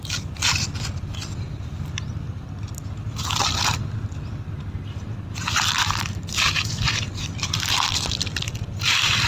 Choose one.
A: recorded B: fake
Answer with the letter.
A